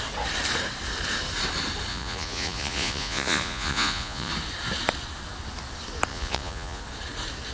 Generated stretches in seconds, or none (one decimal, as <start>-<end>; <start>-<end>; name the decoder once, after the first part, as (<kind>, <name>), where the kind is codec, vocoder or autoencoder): 1.9-4.3 (vocoder, Vocos); 6.1-6.8